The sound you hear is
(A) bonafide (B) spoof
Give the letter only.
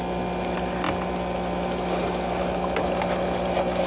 A